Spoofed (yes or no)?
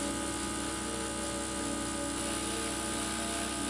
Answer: no